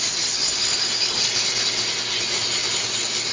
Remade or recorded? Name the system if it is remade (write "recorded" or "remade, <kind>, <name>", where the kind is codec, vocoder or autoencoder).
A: recorded